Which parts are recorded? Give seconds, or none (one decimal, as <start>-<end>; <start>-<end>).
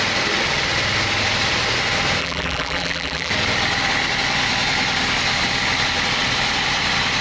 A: 0.0-2.2; 3.3-7.2